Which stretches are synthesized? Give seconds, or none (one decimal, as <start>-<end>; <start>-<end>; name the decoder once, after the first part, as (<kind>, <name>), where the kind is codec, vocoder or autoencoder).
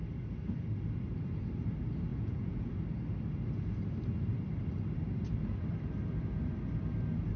2.1-2.7 (vocoder, Vocos)